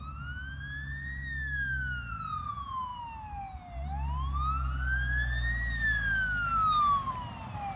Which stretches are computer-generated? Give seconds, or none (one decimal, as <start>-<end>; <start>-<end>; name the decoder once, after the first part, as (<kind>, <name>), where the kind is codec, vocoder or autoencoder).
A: none